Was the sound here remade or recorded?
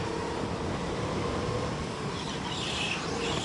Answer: recorded